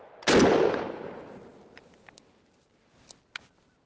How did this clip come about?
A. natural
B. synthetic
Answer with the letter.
A